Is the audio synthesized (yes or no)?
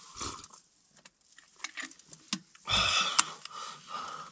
no